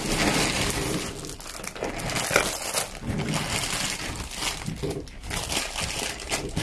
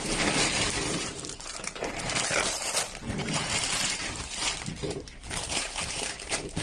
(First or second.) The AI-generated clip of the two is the second